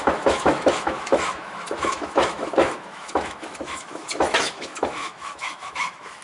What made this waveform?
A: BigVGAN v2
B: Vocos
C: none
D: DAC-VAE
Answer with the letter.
D